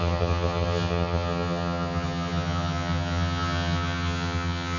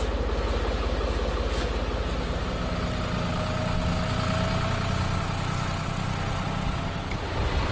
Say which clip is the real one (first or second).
second